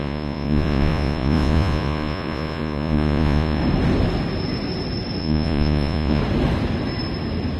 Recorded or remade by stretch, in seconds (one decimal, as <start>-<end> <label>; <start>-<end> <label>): 0.0-3.6 remade; 3.6-5.2 recorded; 5.2-6.2 remade; 6.2-7.6 recorded